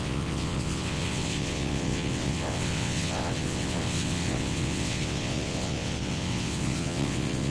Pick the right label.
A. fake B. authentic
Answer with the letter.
A